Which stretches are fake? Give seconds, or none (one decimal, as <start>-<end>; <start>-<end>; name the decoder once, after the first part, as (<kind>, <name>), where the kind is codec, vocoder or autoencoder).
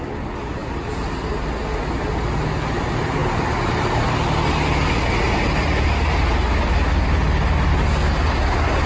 none